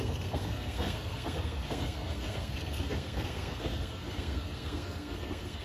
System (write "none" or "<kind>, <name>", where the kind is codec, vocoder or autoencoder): codec, SNAC